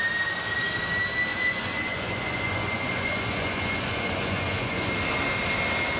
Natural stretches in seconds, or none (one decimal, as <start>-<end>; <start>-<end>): 0.0-1.3; 4.9-6.0

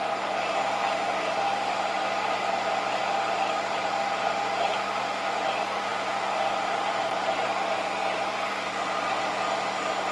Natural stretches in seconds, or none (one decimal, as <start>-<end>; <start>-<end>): 0.0-10.1